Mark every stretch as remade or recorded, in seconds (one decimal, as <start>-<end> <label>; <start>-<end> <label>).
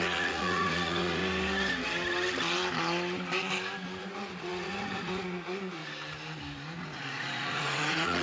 0.0-1.2 remade; 1.2-4.0 recorded; 4.0-5.8 remade; 5.8-6.8 recorded; 6.8-8.2 remade